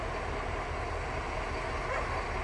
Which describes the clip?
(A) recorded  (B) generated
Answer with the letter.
A